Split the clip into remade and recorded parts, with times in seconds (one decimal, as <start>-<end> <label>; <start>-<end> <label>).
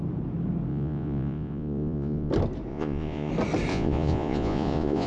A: 0.0-0.7 recorded; 0.7-2.3 remade; 2.3-2.7 recorded; 2.7-3.3 remade; 3.3-3.7 recorded; 3.7-5.1 remade